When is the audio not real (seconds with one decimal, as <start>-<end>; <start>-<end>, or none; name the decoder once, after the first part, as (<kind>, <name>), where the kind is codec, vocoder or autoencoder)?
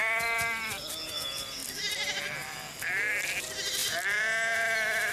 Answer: none